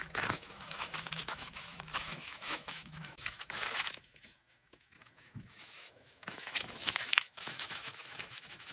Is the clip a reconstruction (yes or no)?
yes